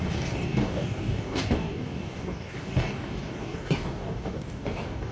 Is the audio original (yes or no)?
no